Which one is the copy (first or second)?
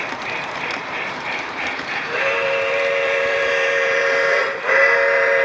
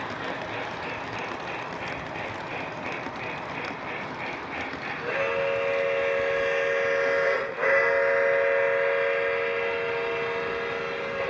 first